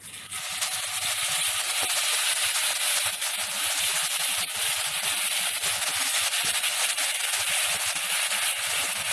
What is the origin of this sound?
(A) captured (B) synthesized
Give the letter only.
A